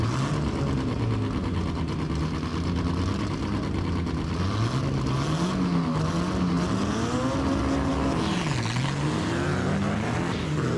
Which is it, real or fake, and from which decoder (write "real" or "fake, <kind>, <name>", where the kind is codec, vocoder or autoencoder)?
real